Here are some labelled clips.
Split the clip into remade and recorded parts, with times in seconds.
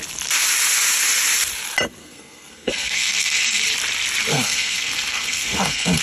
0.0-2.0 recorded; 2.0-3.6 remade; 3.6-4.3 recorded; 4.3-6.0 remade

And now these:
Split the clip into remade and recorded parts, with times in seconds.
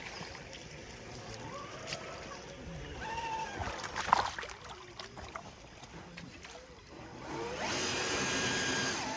0.0-9.2 recorded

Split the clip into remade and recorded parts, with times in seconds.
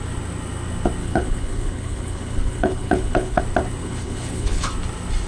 0.0-1.0 recorded; 1.0-3.4 remade; 3.4-3.8 recorded; 3.8-4.7 remade; 4.7-5.3 recorded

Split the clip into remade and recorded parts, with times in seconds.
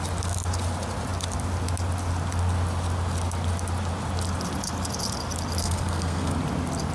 0.0-5.6 recorded; 5.6-6.3 remade; 6.3-6.9 recorded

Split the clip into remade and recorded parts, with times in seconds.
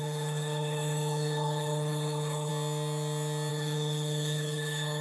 0.0-2.5 remade; 2.5-3.5 recorded; 3.5-5.0 remade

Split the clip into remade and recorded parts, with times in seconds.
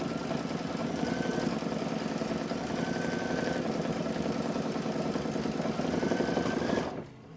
0.0-3.9 recorded; 3.9-6.5 remade; 6.5-7.4 recorded